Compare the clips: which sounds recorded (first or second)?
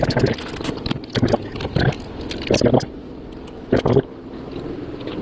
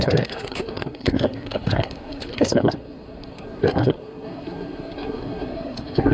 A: first